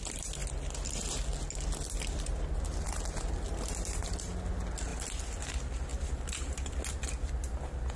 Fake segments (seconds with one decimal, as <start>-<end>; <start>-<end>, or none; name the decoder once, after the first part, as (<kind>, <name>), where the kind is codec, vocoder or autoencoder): none